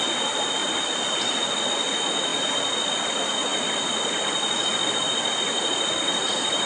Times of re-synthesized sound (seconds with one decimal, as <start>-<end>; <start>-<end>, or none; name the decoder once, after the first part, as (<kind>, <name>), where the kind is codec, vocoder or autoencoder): none